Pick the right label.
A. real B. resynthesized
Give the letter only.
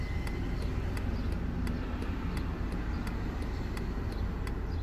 A